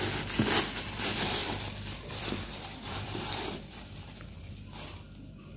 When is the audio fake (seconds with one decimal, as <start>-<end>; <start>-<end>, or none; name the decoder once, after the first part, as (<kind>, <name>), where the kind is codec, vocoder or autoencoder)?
1.4-3.3 (vocoder, BigVGAN v2)

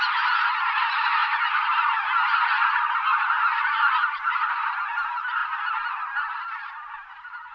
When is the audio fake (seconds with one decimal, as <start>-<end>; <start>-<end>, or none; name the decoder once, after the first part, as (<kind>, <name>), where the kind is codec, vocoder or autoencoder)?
none

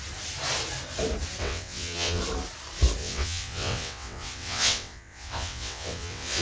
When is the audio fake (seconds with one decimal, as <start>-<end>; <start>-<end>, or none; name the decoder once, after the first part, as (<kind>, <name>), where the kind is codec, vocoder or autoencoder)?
1.4-2.2 (vocoder, WaveNeXt); 3.0-6.4

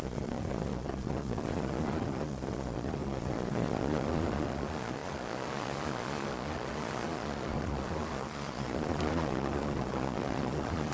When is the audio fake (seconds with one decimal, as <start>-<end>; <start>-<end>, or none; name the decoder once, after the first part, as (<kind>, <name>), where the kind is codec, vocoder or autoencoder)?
0.0-10.9 (vocoder, Vocos)

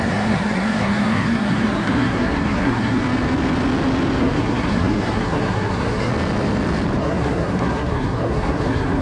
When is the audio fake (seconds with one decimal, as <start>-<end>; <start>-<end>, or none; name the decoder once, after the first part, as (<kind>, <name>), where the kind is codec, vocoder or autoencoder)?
0.0-3.0 (codec, SNAC); 4.2-6.1; 7.0-9.0

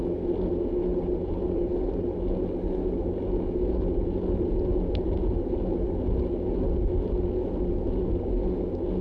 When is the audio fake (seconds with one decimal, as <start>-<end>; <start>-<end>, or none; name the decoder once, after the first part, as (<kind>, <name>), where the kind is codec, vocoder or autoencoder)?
0.9-1.7 (vocoder, BigVGAN v2)

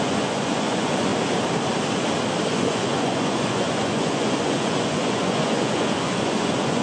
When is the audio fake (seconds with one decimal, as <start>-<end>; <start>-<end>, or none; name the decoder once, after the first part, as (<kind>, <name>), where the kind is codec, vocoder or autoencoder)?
0.0-1.1 (vocoder, Vocos); 2.5-6.8